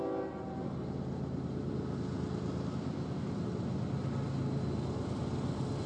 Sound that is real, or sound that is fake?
real